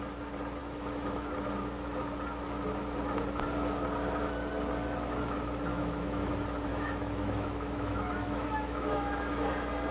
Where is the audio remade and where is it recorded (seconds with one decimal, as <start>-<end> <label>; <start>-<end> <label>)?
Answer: 0.0-0.6 recorded; 0.6-1.3 remade; 1.3-5.7 recorded; 5.7-6.3 remade; 6.3-6.7 recorded; 6.7-9.5 remade; 9.5-9.9 recorded